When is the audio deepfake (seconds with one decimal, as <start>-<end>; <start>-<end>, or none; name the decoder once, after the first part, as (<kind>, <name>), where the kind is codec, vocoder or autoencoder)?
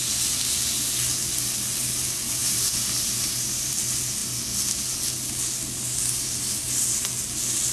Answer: 2.4-3.7 (vocoder, BigVGAN v2)